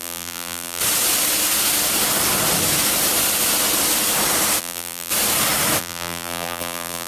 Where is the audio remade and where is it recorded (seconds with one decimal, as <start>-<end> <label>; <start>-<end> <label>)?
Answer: 0.0-0.8 remade; 0.8-4.6 recorded; 4.6-5.1 remade; 5.1-5.8 recorded; 5.8-7.1 remade